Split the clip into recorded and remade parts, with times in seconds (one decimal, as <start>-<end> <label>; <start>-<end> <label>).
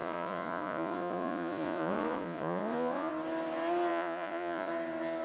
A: 0.0-3.1 remade; 3.1-3.9 recorded; 3.9-4.7 remade; 4.7-5.2 recorded